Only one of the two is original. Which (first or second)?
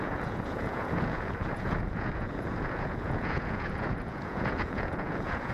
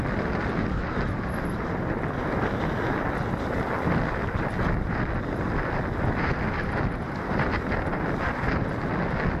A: second